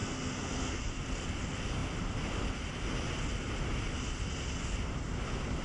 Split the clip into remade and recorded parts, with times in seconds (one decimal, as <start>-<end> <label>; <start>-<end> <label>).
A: 0.0-0.8 remade; 0.8-5.6 recorded